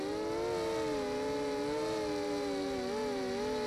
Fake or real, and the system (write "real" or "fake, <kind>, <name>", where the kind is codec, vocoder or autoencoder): real